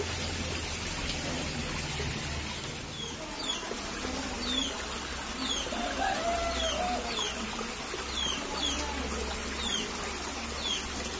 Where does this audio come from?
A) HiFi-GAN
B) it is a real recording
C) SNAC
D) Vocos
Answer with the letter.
B